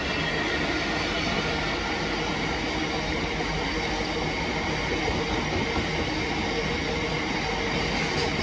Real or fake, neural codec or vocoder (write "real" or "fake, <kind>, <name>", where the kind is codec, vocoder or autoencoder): real